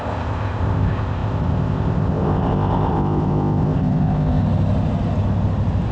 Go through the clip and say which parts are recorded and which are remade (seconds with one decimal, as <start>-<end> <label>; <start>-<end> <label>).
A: 0.0-4.4 remade; 4.4-5.9 recorded